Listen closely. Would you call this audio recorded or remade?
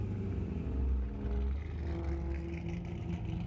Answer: recorded